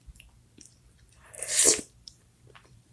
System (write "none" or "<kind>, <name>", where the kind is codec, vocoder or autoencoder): vocoder, BigVGAN v2